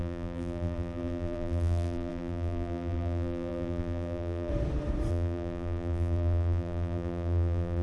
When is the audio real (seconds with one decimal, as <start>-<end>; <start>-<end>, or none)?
4.5-5.1